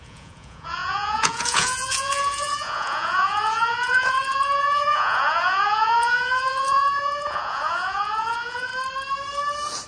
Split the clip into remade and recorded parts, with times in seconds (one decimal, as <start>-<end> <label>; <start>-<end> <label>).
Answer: 0.0-8.7 remade; 8.7-9.9 recorded